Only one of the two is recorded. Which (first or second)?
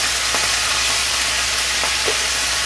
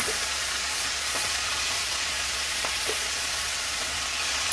first